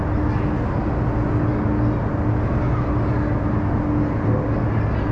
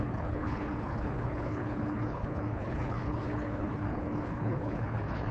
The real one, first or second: first